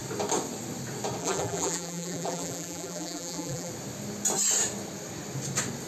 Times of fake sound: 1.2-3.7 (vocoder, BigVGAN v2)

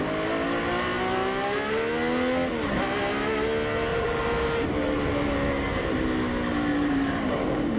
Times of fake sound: 3.9-6.0 (vocoder, BigVGAN v2); 6.7-7.8

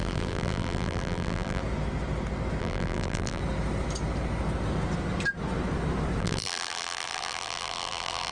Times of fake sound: 0.0-1.6 (vocoder, BigVGAN v2); 2.6-3.4; 6.2-8.3

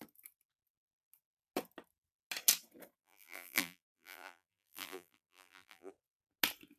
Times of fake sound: 3.0-5.9 (vocoder, BigVGAN v2)

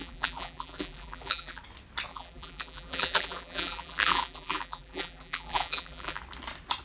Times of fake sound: 0.0-1.6 (vocoder, BigVGAN v2); 2.1-6.2

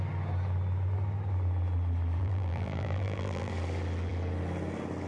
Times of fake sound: 2.2-3.5 (vocoder, BigVGAN v2)